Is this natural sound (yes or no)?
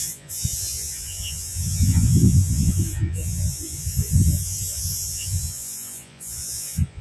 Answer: no